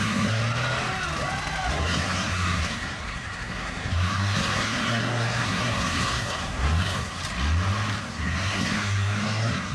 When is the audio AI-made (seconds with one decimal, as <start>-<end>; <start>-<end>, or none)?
0.0-0.4; 1.7-7.2; 8.0-9.7